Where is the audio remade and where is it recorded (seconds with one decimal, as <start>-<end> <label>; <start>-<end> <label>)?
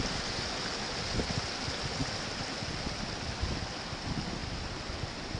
0.0-5.4 recorded